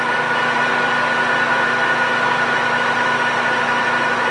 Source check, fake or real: real